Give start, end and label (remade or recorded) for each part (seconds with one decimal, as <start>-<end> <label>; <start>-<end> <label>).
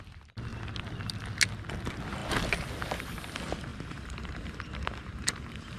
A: 0.0-3.7 recorded; 3.7-5.8 remade